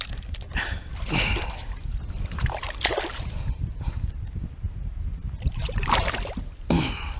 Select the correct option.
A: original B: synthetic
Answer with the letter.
B